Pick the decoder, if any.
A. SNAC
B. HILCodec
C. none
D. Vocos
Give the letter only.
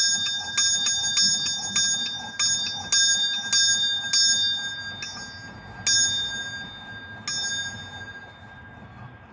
C